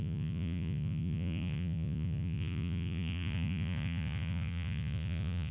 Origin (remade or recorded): remade